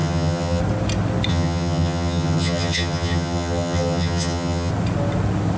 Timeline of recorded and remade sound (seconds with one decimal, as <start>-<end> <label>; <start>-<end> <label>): 0.0-0.6 remade; 0.6-1.3 recorded; 1.3-4.7 remade; 4.7-5.6 recorded